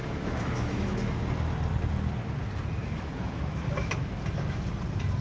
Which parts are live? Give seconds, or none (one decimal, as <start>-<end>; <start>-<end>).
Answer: 1.2-2.8; 4.1-5.2